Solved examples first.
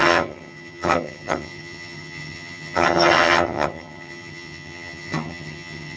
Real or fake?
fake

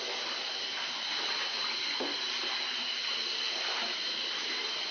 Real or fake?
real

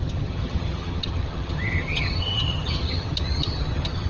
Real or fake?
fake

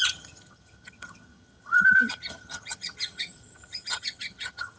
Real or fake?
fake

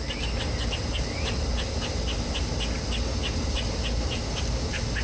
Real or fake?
real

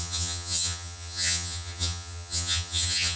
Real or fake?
fake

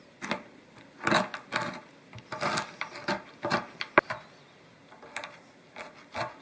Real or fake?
real